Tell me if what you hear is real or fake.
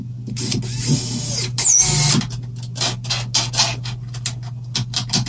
real